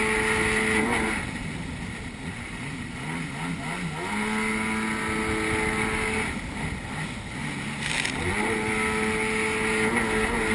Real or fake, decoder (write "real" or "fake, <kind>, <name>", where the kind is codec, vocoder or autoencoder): real